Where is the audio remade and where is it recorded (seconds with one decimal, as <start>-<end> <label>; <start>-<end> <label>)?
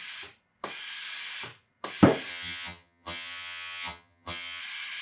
0.0-2.3 recorded; 2.3-4.6 remade; 4.6-5.0 recorded